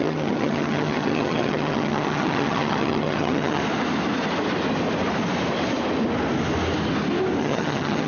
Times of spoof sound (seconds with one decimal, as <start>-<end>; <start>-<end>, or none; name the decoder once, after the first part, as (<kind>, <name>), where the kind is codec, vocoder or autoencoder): 0.0-3.6 (vocoder, HiFi-GAN); 7.4-8.1